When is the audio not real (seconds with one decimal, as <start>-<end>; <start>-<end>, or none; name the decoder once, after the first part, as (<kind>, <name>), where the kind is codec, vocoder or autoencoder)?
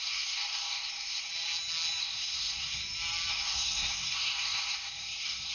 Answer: 0.0-1.3 (codec, SNAC); 2.0-2.8; 3.3-5.5